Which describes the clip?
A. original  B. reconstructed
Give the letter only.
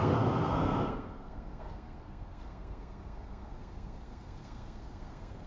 B